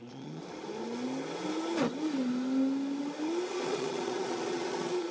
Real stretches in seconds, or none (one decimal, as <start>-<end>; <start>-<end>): 0.4-3.5